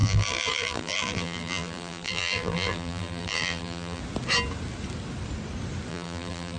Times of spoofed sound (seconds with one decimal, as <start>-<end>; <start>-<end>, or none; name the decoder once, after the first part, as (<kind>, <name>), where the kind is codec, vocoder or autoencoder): 0.0-4.0 (vocoder, BigVGAN v2); 5.9-6.6